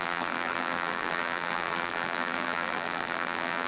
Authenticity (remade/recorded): remade